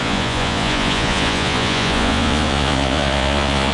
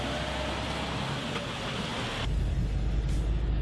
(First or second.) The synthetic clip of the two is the first